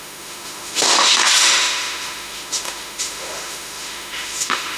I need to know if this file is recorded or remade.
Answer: remade